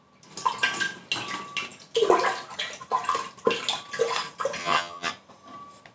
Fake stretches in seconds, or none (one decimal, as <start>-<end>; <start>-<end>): 4.6-5.1

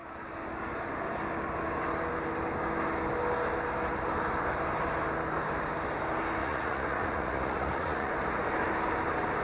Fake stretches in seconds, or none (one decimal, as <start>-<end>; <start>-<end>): 6.4-8.1

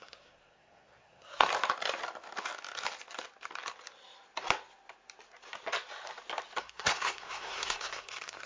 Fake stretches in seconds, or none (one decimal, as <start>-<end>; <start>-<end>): 0.0-1.5; 6.6-8.5

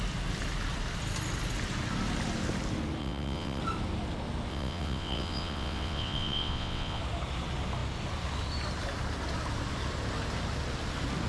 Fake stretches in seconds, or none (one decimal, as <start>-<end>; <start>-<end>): 3.0-3.6; 4.5-7.0

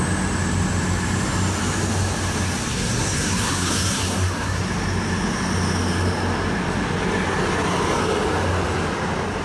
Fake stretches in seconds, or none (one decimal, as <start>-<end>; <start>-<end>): 2.7-4.6